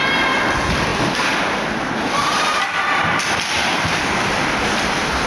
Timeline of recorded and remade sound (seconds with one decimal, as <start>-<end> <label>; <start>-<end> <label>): 0.0-5.3 recorded